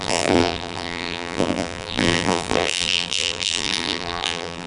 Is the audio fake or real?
fake